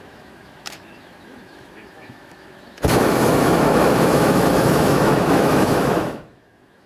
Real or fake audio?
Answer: fake